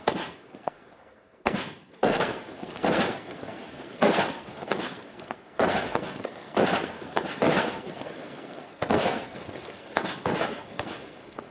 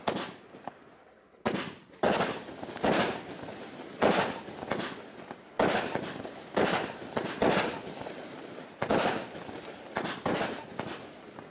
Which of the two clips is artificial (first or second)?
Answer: first